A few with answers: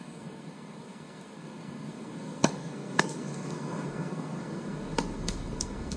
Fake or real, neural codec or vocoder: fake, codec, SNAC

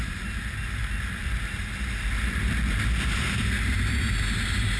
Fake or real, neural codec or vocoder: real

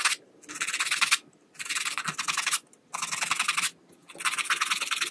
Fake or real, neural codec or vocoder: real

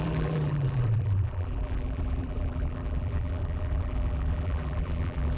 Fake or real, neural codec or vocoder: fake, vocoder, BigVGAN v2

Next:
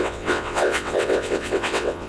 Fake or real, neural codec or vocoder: fake, vocoder, WaveNeXt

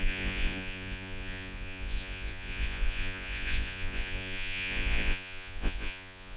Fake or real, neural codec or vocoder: fake, vocoder, Vocos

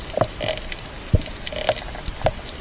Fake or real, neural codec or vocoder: real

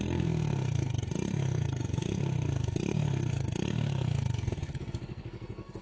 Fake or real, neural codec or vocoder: fake, codec, SNAC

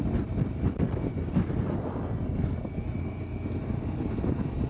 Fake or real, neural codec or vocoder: real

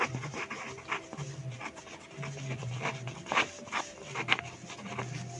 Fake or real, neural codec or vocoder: real